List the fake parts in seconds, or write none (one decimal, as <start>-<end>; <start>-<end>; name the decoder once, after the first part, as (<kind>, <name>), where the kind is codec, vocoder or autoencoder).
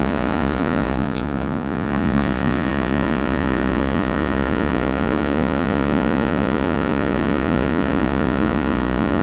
0.0-9.2 (vocoder, Vocos)